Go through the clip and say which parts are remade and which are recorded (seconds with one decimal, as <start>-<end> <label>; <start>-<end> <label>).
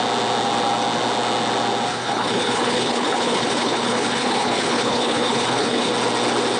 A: 0.0-1.9 recorded; 1.9-5.9 remade; 5.9-6.6 recorded